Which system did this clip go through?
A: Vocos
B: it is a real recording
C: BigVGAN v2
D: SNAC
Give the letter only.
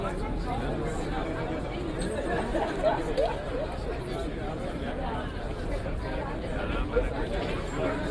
B